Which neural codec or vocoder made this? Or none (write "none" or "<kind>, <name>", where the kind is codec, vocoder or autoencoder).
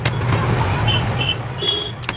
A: none